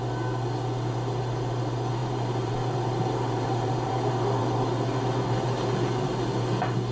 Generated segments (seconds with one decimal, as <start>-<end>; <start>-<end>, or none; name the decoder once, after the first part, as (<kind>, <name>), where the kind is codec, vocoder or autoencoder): 2.0-3.9 (vocoder, BigVGAN v2)